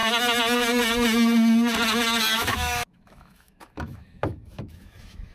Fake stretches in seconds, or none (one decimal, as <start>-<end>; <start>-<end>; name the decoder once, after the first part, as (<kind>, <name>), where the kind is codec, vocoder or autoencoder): 2.2-5.3 (autoencoder, DAC-VAE)